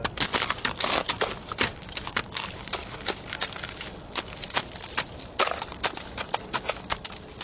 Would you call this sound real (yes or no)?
yes